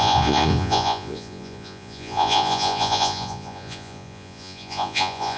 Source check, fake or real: fake